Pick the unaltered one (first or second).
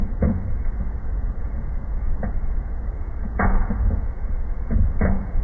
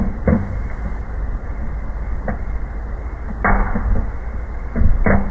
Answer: second